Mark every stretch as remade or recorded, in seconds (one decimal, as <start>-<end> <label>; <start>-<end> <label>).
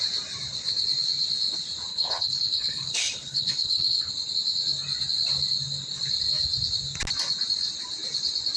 0.0-1.9 recorded; 1.9-4.1 remade; 4.1-8.6 recorded